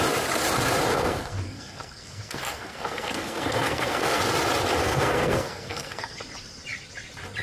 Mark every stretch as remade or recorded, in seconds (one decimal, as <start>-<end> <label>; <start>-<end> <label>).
0.0-0.9 recorded; 0.9-4.2 remade; 4.2-4.8 recorded; 4.8-6.2 remade; 6.2-7.4 recorded